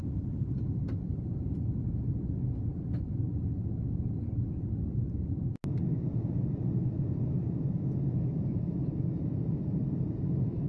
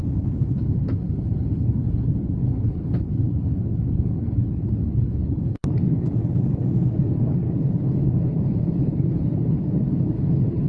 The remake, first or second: second